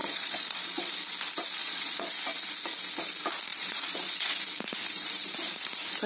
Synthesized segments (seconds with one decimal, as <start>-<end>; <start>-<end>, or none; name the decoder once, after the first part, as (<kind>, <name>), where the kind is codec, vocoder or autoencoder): 0.0-0.9 (vocoder, Vocos); 1.6-2.1; 3.5-4.3